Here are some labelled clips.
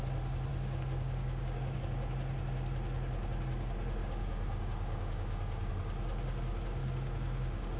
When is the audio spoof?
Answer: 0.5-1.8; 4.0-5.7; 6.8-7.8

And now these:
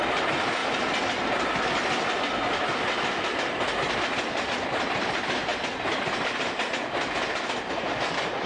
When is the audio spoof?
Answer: none

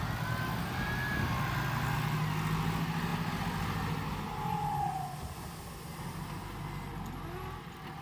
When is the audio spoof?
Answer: none